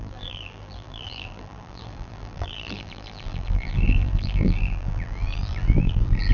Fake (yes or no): yes